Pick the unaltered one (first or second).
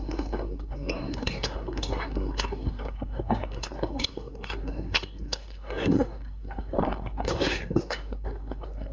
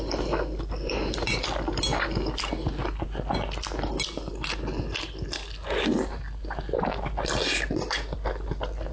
second